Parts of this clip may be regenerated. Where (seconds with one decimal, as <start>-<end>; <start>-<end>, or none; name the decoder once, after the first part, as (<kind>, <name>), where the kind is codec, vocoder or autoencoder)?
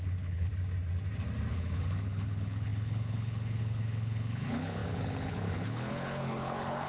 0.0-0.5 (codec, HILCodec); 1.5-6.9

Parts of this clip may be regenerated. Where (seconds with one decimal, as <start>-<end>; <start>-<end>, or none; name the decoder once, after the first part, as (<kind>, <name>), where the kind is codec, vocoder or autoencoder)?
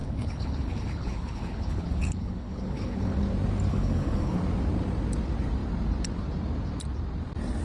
0.0-3.2 (codec, HILCodec); 3.7-4.4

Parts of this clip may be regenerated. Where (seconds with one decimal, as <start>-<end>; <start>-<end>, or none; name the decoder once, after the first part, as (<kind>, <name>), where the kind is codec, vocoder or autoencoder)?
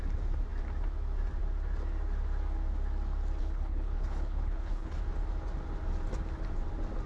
3.4-5.0 (codec, HILCodec)